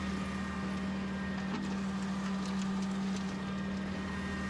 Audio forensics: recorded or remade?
recorded